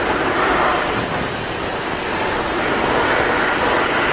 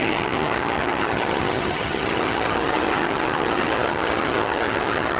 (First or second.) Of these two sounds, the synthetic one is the second